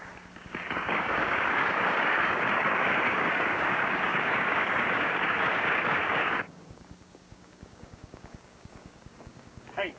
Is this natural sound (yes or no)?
no